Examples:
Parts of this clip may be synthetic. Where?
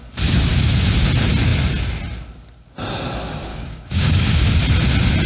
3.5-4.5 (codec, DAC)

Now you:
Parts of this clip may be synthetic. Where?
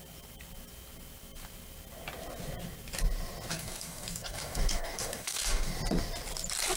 3.5-5.7 (codec, DAC)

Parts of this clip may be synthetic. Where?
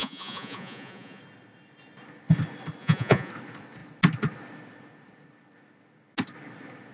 0.0-1.2 (vocoder, Vocos); 2.8-3.3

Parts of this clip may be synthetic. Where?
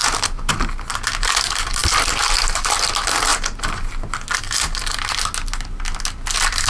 1.8-2.9 (vocoder, BigVGAN v2)